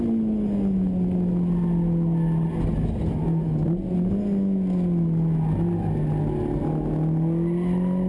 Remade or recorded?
recorded